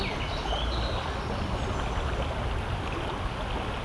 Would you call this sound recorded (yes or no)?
yes